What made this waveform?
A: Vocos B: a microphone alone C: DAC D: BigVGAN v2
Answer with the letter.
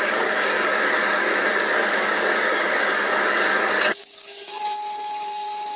C